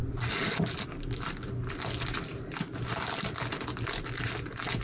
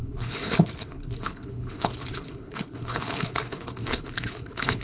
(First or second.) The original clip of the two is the first